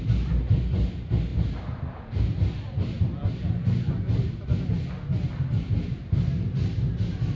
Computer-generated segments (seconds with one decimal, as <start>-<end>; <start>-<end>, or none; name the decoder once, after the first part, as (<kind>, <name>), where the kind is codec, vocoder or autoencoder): none